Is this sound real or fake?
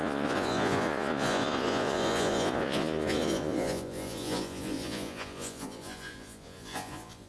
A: fake